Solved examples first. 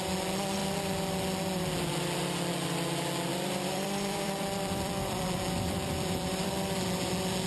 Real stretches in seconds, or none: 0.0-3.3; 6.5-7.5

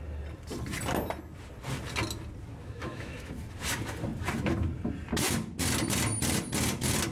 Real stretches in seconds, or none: 0.0-2.6; 3.3-7.1

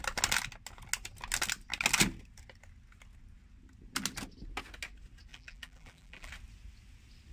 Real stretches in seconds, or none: 0.0-5.3; 6.3-7.3

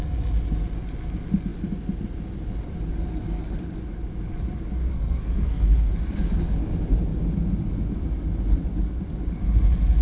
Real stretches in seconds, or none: 0.0-4.8; 5.9-10.0

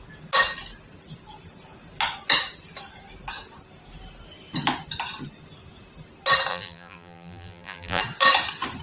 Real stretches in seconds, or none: 0.0-6.5; 8.0-8.8